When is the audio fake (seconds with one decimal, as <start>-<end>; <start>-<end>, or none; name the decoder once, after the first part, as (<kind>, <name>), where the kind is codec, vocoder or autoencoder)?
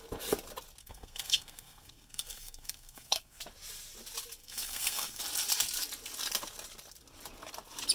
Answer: 0.8-3.4 (codec, SNAC); 4.4-5.2